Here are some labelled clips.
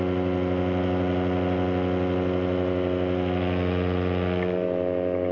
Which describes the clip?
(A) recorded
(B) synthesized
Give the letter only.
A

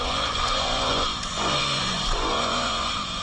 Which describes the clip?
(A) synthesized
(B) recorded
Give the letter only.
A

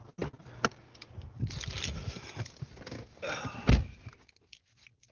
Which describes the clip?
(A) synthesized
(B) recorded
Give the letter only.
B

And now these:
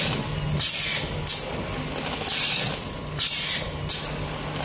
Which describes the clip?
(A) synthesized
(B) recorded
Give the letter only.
B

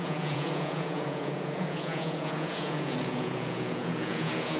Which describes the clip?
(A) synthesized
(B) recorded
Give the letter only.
A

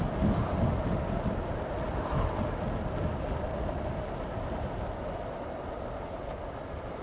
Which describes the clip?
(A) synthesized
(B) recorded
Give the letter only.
B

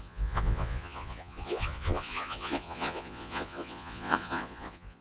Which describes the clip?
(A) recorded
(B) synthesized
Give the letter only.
B